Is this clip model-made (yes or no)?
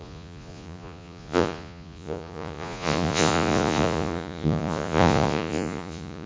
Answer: yes